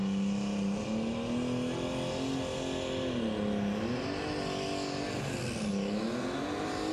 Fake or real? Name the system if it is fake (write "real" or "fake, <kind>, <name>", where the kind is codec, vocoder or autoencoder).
real